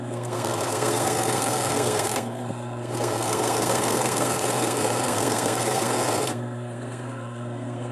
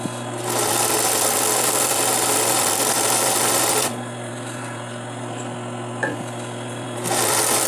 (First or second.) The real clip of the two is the second